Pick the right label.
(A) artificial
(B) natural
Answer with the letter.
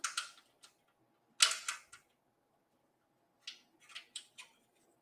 B